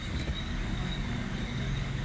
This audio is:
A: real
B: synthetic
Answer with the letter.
B